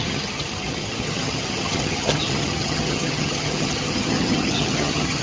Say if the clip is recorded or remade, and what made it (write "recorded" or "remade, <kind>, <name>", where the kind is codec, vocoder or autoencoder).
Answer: remade, vocoder, HiFi-GAN